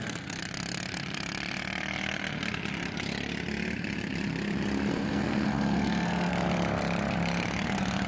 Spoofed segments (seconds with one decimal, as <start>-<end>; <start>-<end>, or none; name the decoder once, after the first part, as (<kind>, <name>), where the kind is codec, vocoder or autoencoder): 0.0-0.4 (codec, SNAC); 4.9-6.3